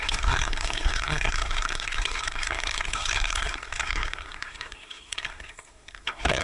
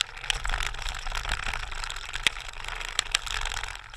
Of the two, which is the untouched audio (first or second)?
second